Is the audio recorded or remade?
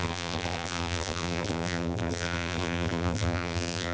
remade